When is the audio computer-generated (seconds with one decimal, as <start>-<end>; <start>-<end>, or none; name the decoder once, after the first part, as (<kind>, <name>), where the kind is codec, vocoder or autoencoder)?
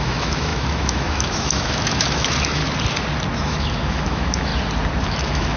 0.0-2.6 (autoencoder, DAC-VAE); 3.4-4.5; 5.0-5.6